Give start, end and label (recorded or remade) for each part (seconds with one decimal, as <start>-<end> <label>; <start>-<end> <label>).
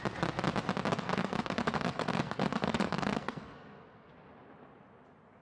0.0-0.9 recorded; 0.9-4.1 remade; 4.1-5.4 recorded